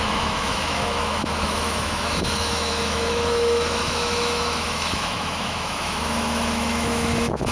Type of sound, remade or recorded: remade